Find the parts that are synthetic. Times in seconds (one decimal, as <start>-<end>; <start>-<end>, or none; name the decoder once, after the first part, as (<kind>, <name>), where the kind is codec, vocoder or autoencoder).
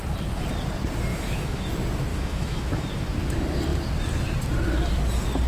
1.1-1.7 (autoencoder, DAC-VAE); 2.1-2.8